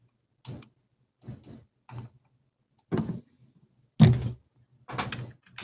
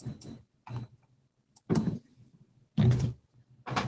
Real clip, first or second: first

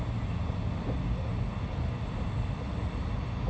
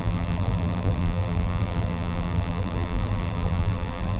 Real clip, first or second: first